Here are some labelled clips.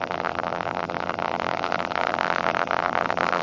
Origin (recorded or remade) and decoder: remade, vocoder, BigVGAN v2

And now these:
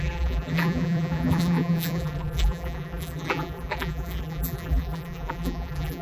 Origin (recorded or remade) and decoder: remade, vocoder, BigVGAN v2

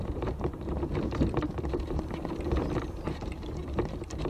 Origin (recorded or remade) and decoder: remade, vocoder, BigVGAN v2